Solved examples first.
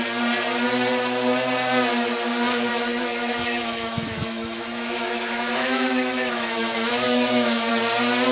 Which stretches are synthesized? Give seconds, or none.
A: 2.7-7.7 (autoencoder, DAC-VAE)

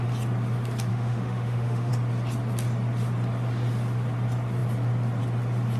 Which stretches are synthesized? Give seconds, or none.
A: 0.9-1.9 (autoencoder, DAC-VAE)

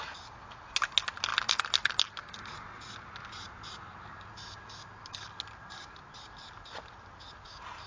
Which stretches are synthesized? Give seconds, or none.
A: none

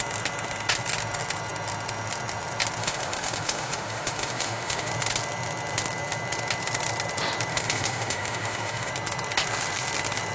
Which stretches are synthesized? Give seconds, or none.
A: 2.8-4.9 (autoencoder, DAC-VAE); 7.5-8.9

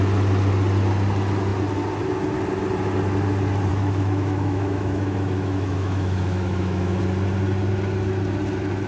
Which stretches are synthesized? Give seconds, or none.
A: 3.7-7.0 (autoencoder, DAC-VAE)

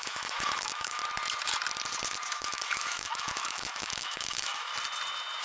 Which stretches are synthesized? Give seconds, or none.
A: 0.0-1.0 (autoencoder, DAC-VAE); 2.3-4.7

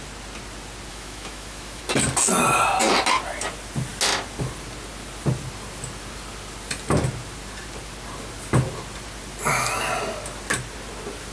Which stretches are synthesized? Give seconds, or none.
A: 0.9-1.8 (autoencoder, DAC-VAE)

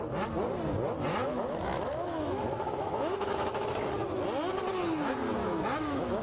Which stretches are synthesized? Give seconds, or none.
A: 1.1-3.9 (autoencoder, DAC-VAE); 5.4-6.2